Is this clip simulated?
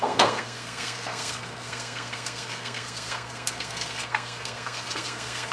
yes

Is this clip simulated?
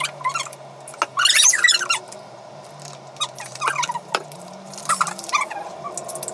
no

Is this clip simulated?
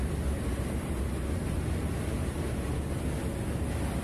no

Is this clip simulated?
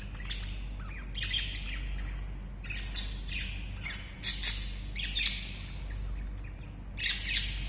no